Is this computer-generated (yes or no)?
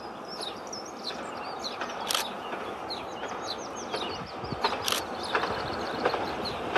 no